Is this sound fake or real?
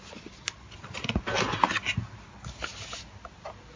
real